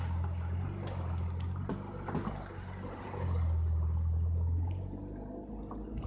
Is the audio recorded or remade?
recorded